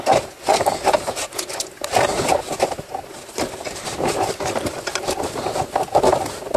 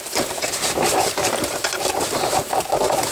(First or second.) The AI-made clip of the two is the second